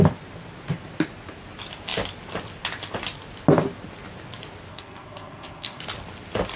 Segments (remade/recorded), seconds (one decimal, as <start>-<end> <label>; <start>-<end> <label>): 0.0-4.7 recorded; 4.7-5.8 remade; 5.8-6.6 recorded